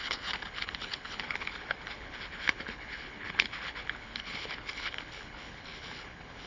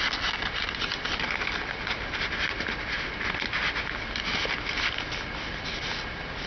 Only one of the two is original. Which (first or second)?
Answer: second